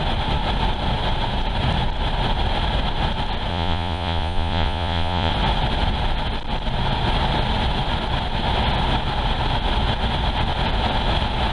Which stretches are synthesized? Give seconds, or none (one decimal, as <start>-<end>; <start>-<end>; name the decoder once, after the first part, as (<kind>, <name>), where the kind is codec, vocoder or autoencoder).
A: 3.5-5.3 (vocoder, Vocos)